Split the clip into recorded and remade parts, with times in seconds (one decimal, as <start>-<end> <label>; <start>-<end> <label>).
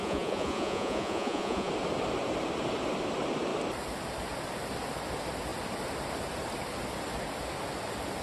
0.0-1.7 remade; 1.7-8.2 recorded